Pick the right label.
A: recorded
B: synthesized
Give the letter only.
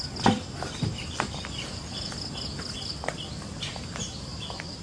A